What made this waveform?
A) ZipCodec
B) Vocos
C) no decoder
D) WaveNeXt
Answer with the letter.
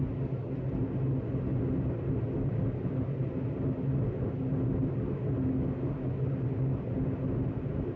C